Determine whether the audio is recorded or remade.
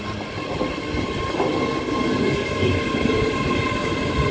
recorded